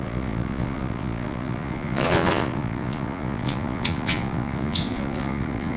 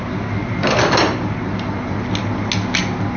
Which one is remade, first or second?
first